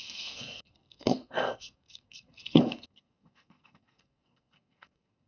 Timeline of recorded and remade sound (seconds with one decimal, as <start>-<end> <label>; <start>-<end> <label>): 0.0-5.3 remade